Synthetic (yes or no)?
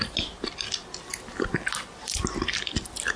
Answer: no